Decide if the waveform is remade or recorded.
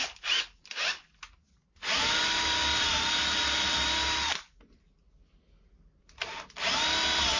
recorded